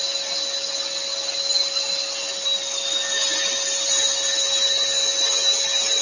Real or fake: real